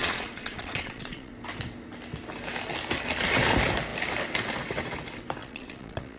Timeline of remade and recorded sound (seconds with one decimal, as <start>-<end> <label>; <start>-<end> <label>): 0.0-1.3 remade; 1.3-5.4 recorded; 5.4-6.2 remade